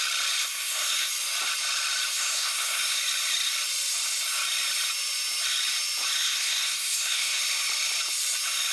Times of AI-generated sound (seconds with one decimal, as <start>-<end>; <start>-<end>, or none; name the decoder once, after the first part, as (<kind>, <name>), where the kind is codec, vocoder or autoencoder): 0.4-1.1 (codec, SNAC); 2.1-3.0; 6.2-7.4